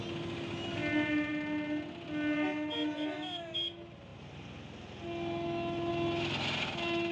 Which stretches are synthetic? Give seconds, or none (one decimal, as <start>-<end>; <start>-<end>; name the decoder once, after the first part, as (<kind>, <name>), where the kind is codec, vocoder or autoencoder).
none